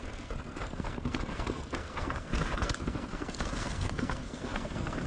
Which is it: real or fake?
fake